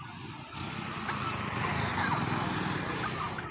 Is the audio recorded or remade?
recorded